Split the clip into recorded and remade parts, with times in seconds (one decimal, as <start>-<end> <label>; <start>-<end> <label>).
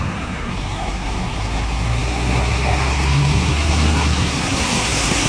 0.0-5.3 remade